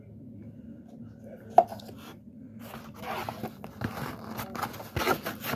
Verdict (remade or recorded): recorded